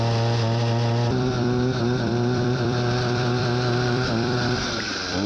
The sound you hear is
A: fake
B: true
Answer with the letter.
A